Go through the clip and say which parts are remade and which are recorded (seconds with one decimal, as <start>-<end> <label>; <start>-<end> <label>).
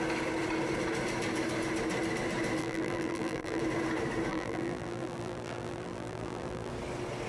0.0-2.6 recorded; 2.6-3.6 remade; 3.6-4.3 recorded; 4.3-6.7 remade; 6.7-7.3 recorded